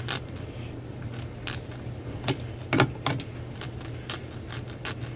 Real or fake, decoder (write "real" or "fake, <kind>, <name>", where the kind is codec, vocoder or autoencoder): real